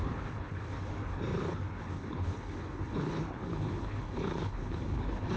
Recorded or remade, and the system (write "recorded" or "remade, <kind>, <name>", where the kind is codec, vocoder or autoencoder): remade, codec, HILCodec